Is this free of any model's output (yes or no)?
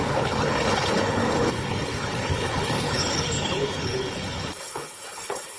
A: no